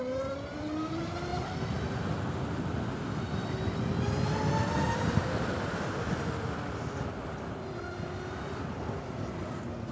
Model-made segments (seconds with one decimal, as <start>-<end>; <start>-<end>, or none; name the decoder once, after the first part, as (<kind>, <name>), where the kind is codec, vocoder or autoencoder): none